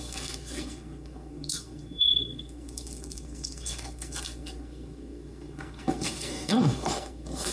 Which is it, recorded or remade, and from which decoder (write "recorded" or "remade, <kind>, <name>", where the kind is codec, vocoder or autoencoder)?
remade, codec, SNAC